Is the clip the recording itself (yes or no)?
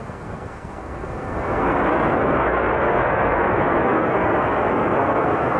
no